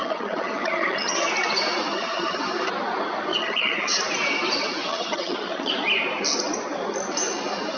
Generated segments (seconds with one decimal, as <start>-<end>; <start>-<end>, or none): 0.0-1.3; 1.9-2.4; 3.3-4.0; 4.9-5.7